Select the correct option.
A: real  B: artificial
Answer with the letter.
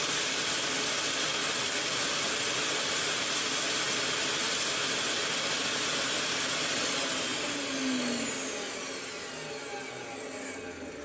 A